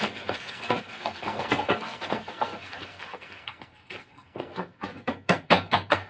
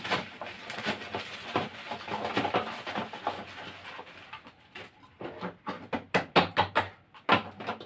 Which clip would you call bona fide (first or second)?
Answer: second